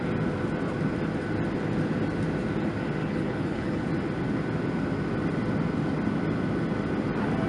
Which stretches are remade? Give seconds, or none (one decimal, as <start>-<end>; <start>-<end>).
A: 3.0-3.8